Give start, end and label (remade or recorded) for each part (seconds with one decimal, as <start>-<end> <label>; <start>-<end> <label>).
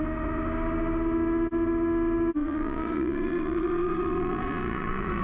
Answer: 0.0-2.4 recorded; 2.4-5.2 remade